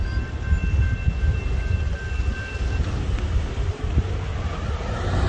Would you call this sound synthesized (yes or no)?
no